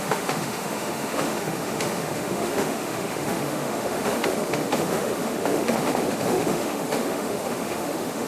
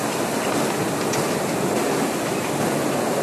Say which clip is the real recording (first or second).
second